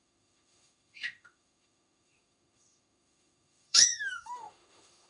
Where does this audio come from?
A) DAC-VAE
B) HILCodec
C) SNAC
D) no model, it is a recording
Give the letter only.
A